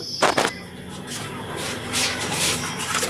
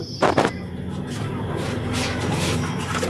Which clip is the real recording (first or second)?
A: second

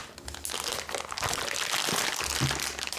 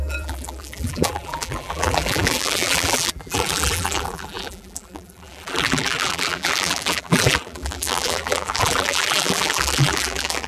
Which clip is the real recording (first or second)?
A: first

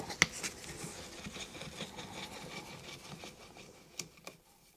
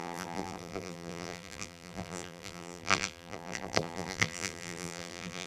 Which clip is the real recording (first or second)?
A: first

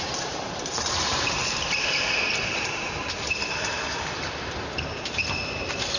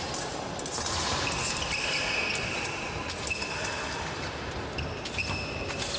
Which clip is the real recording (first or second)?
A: second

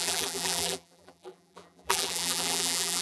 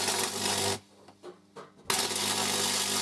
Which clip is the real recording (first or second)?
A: second